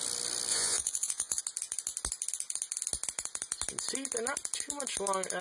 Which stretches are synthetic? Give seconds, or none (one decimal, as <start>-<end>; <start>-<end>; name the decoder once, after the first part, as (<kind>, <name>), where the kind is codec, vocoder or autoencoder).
0.5-1.4 (vocoder, Vocos)